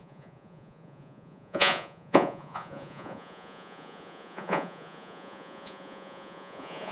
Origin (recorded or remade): remade